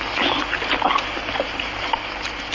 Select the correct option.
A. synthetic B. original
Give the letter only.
B